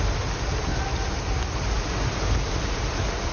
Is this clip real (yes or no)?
yes